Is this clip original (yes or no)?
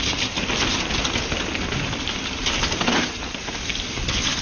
yes